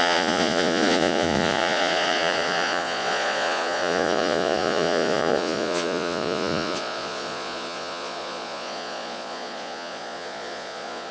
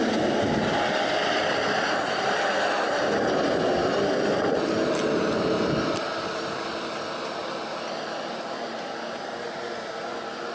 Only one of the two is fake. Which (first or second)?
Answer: first